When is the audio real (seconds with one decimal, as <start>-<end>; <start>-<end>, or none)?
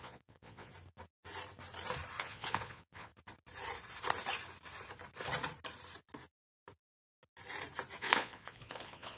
0.7-2.2; 3.1-8.0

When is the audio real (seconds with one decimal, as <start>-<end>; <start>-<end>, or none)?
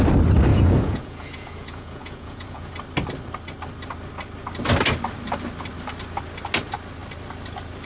0.0-0.5; 2.7-7.9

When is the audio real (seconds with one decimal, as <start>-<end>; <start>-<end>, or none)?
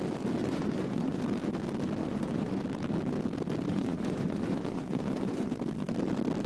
0.0-0.4; 1.2-2.0; 2.6-3.7; 5.5-6.5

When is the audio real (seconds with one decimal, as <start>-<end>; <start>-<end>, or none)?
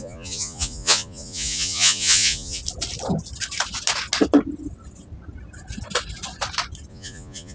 2.6-6.9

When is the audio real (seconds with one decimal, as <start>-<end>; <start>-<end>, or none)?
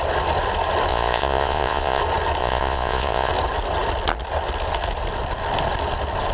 0.0-0.9; 2.0-2.4; 3.3-6.3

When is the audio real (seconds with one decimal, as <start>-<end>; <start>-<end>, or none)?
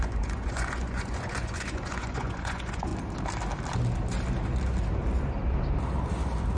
2.9-6.6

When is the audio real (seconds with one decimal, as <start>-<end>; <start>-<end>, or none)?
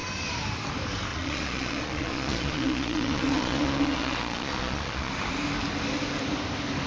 0.0-1.1; 5.1-6.9